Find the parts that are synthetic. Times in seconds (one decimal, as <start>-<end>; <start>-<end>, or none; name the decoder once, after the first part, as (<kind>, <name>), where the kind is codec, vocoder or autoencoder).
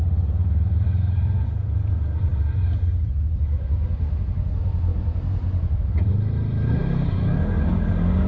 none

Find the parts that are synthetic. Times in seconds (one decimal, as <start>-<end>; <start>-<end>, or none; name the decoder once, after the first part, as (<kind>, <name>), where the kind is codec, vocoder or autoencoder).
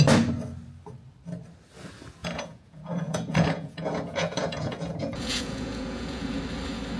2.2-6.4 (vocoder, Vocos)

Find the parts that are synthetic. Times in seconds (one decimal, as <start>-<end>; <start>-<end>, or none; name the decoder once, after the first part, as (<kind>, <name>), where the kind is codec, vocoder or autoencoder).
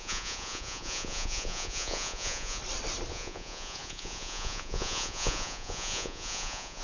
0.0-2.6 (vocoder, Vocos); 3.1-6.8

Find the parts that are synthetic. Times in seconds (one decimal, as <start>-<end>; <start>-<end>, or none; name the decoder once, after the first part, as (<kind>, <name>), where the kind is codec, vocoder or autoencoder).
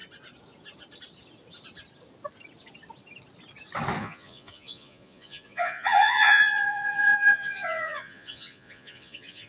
4.0-9.5 (vocoder, Vocos)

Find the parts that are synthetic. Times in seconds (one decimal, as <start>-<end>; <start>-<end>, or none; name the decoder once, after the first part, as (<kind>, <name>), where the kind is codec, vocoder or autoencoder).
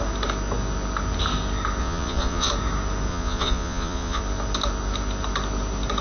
1.8-2.5 (vocoder, Vocos); 3.1-4.2